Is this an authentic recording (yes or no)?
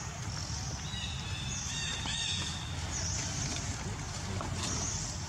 yes